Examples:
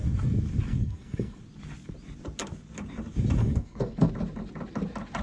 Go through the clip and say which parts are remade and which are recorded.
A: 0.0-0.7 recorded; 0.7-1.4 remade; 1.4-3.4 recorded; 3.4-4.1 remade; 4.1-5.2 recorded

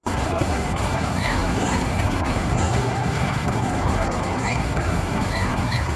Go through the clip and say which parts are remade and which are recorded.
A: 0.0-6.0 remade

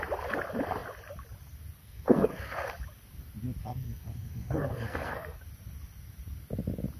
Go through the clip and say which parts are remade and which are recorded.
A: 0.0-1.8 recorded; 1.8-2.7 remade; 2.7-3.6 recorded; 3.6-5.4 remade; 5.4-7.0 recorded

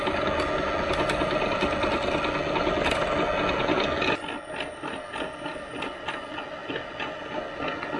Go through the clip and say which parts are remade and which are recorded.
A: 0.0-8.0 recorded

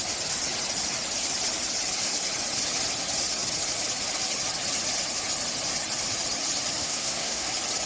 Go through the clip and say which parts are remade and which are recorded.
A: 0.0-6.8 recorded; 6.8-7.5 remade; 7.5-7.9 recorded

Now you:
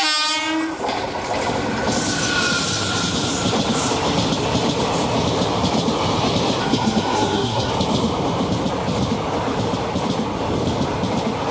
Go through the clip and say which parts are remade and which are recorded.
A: 0.0-6.6 recorded; 6.6-7.7 remade; 7.7-11.5 recorded

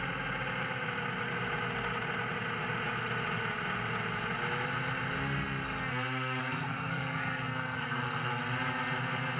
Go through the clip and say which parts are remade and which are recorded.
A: 0.0-6.4 recorded; 6.4-8.4 remade; 8.4-9.4 recorded